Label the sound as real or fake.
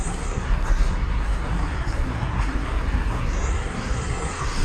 fake